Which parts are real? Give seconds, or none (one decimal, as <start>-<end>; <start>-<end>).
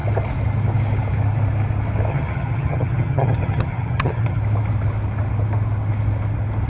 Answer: 0.0-2.1; 4.4-6.7